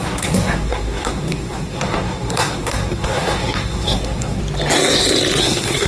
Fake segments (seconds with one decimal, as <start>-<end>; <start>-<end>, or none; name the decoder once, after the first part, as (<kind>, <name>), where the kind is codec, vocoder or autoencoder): 0.0-4.4 (codec, SNAC); 5.4-5.9